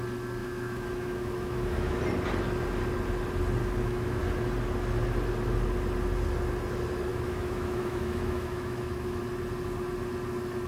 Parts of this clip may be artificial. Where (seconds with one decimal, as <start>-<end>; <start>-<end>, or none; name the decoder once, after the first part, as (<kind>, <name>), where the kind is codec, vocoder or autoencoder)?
0.4-2.0 (autoencoder, DAC-VAE); 3.6-4.2; 7.1-9.2